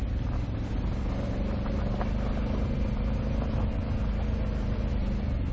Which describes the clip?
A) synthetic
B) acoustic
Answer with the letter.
B